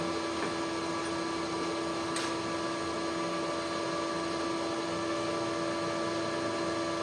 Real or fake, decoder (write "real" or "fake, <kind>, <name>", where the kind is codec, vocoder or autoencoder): real